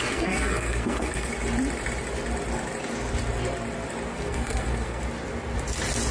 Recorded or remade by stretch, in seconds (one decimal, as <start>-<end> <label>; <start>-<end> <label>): 0.0-1.3 remade; 1.3-4.1 recorded; 4.1-5.0 remade; 5.0-6.1 recorded